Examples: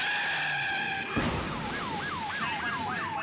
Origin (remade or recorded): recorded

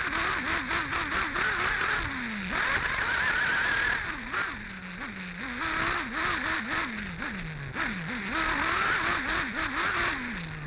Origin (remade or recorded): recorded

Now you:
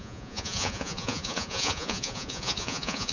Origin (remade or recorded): remade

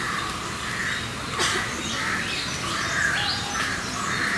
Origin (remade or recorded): recorded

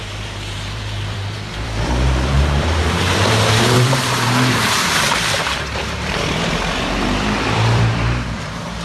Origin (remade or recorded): remade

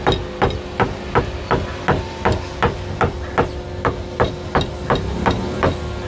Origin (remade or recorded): recorded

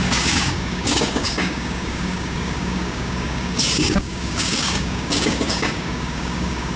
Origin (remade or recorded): remade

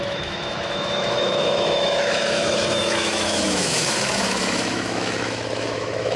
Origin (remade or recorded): remade